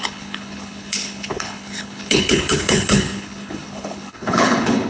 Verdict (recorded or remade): remade